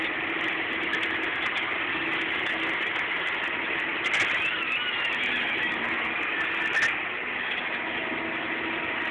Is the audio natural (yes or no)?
yes